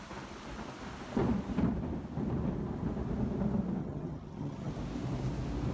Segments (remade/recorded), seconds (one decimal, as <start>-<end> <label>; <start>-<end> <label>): 0.0-3.8 recorded; 3.8-4.7 remade; 4.7-5.7 recorded